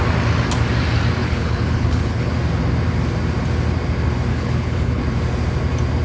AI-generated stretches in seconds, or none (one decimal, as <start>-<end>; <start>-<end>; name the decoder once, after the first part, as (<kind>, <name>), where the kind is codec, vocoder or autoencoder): 1.2-2.3 (codec, HILCodec); 4.3-5.0

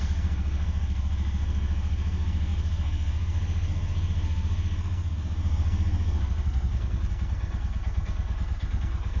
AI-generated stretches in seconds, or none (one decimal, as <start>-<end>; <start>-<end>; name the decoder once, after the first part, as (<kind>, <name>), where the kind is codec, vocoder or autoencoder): 0.0-9.2 (codec, SNAC)

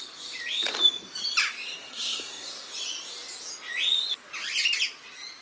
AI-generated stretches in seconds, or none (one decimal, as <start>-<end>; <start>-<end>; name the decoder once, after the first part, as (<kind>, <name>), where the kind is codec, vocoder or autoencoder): 1.8-2.7 (codec, SNAC)

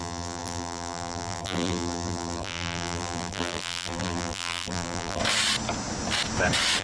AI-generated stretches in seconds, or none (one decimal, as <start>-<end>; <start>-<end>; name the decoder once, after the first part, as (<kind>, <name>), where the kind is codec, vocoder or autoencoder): 0.0-5.2 (vocoder, BigVGAN v2)

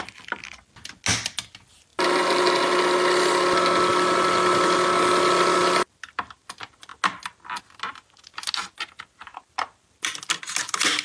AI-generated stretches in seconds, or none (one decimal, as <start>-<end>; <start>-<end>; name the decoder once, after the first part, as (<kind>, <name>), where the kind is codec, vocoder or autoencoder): none